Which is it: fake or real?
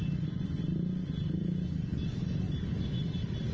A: real